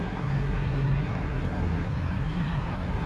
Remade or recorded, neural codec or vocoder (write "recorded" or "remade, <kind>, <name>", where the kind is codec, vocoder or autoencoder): remade, codec, SNAC